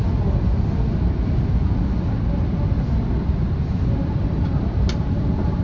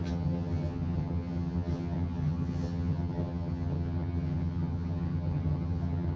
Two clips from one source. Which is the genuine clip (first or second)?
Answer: first